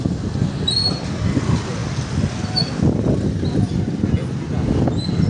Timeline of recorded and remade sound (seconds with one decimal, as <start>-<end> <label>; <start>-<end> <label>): 0.0-5.3 recorded